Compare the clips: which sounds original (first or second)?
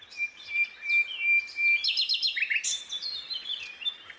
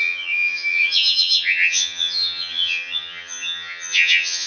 first